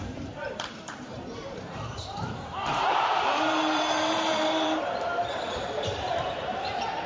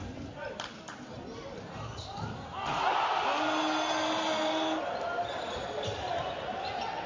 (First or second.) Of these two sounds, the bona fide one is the second